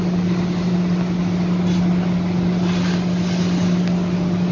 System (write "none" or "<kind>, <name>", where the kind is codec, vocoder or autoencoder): none